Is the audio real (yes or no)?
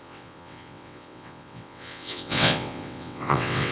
no